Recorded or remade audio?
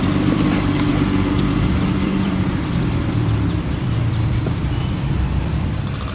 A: remade